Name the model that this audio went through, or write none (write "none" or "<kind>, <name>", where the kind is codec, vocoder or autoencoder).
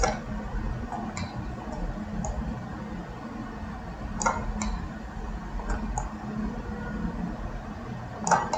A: none